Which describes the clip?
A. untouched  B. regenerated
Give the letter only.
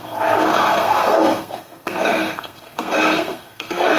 B